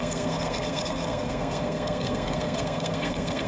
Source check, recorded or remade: remade